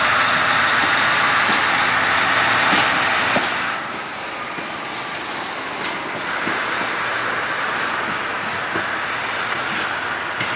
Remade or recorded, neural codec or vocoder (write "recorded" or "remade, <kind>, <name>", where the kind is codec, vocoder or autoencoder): recorded